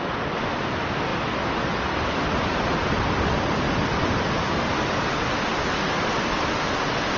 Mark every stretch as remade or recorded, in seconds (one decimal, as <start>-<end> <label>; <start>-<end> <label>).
0.0-7.2 recorded